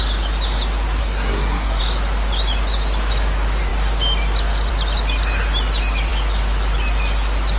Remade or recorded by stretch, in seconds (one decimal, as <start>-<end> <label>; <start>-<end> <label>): 0.0-1.0 recorded; 1.0-1.8 remade; 1.8-7.6 recorded

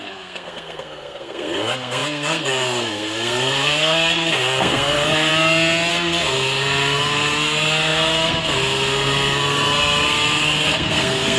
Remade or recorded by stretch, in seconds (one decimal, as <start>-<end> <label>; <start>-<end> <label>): 0.0-5.3 remade; 5.3-5.9 recorded; 5.9-11.4 remade